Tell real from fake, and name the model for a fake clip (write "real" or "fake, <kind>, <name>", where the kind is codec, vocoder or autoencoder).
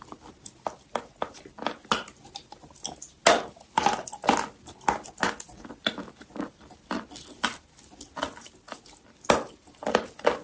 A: real